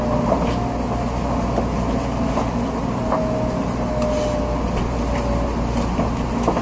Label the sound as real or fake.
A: real